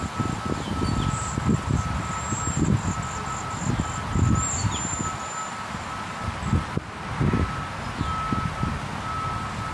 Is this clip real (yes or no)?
yes